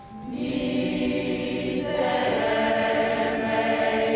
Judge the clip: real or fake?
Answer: real